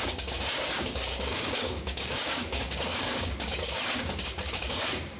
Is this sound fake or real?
fake